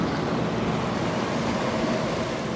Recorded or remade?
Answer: recorded